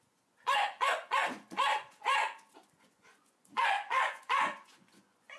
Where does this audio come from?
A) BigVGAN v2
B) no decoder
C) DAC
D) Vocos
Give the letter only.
D